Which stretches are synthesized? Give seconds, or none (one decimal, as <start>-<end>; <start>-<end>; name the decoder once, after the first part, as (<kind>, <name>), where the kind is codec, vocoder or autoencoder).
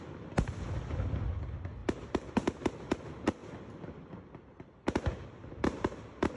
none